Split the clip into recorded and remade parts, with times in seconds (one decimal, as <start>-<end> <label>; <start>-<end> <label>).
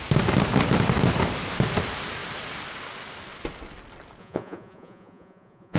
0.0-4.2 recorded; 4.2-5.8 remade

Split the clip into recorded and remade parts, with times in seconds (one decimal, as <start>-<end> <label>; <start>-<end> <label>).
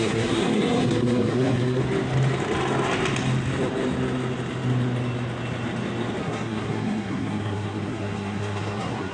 0.0-1.8 remade; 1.8-6.2 recorded; 6.2-9.1 remade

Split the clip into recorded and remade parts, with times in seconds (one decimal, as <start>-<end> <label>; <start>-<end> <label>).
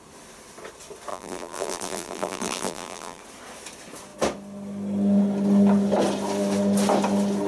0.0-1.1 recorded; 1.1-3.2 remade; 3.2-7.5 recorded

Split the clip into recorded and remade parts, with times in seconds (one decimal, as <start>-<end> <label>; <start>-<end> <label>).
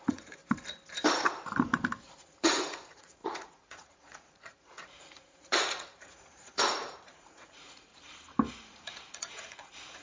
0.0-0.4 remade; 0.4-2.0 recorded; 2.0-7.9 remade; 7.9-8.5 recorded; 8.5-10.0 remade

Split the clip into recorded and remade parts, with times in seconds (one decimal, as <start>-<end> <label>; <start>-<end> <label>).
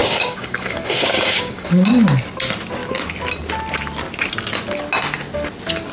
0.0-1.9 remade; 1.9-5.9 recorded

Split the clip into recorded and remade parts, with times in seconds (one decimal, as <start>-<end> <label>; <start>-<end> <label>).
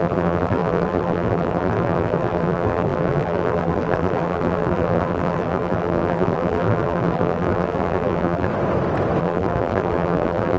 0.0-8.5 remade; 8.5-9.2 recorded; 9.2-10.6 remade